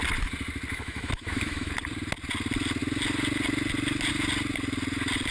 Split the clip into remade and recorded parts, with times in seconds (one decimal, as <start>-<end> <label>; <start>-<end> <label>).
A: 0.0-0.7 recorded; 0.7-1.7 remade; 1.7-5.3 recorded